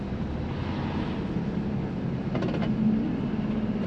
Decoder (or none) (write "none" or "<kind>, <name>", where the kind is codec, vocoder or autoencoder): none